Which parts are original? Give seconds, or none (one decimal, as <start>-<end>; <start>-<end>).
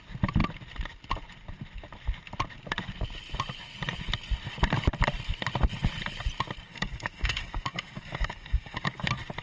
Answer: 0.0-6.7; 8.9-9.4